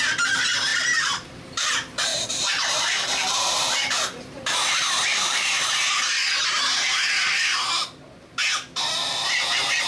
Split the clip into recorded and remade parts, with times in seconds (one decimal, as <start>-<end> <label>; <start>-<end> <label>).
0.0-0.7 recorded; 0.7-1.7 remade; 1.7-2.1 recorded; 2.1-4.4 remade; 4.4-5.1 recorded; 5.1-5.7 remade; 5.7-9.9 recorded